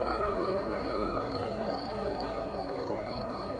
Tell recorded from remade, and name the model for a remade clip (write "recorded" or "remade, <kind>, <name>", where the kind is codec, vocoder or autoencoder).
remade, codec, SNAC